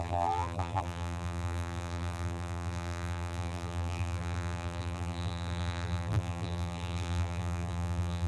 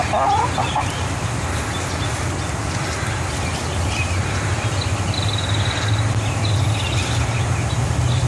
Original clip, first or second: second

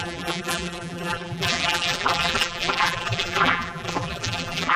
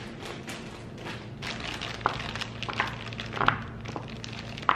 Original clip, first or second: second